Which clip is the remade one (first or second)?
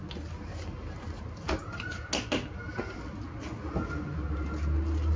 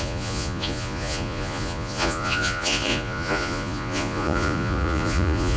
second